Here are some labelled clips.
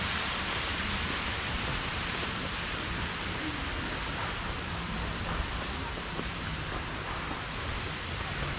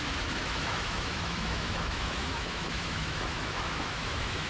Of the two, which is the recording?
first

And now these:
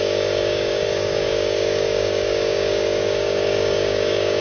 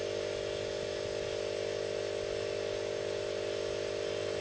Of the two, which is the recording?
second